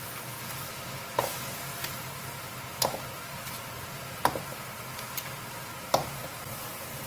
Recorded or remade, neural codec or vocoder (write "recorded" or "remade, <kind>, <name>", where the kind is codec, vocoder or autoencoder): recorded